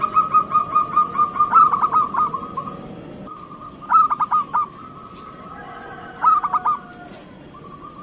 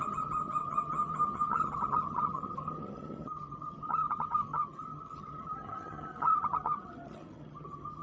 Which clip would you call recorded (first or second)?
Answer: first